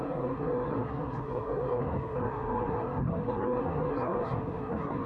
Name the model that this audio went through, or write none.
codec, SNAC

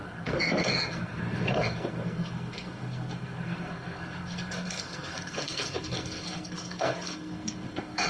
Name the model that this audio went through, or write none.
codec, SNAC